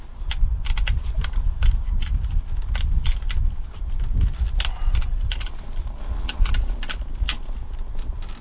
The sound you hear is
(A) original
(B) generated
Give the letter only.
A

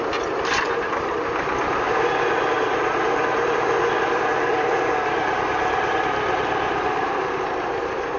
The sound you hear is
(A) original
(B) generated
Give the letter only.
A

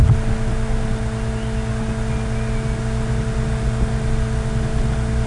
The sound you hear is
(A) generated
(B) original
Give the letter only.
B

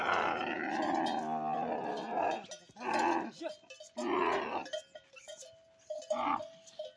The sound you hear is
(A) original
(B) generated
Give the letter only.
A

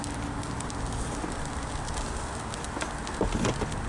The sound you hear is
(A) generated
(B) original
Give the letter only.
B